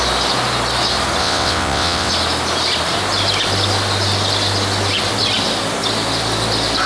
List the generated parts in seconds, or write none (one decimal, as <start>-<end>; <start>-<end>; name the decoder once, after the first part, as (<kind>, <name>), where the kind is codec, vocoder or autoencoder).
1.2-2.1 (vocoder, WaveNeXt)